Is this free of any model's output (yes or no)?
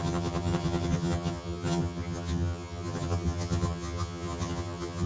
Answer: no